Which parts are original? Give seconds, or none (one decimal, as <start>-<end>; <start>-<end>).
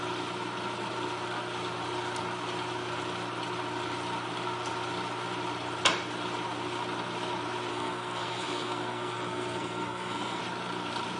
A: 0.0-7.7; 10.4-11.2